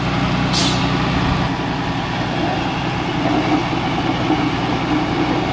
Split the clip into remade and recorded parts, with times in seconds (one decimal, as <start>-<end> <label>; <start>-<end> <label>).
0.0-5.5 recorded